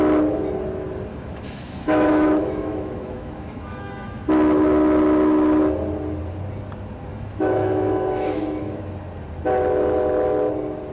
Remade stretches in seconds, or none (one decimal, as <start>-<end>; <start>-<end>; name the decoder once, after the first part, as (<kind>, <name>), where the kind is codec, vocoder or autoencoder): 1.1-4.2 (autoencoder, DAC-VAE); 7.1-8.8